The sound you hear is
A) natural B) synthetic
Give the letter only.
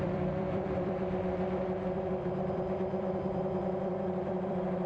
B